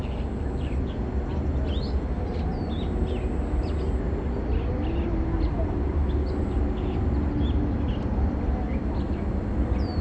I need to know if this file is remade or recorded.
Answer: recorded